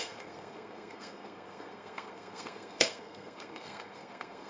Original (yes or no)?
no